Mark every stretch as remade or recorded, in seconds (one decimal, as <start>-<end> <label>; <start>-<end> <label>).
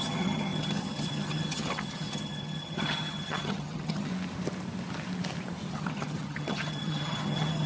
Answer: 0.0-4.1 remade; 4.1-5.7 recorded; 5.7-7.7 remade